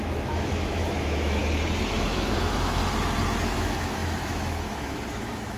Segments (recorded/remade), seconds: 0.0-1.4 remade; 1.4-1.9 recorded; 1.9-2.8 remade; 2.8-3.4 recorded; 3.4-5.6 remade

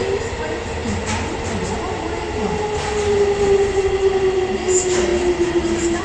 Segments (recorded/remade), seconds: 0.0-6.0 recorded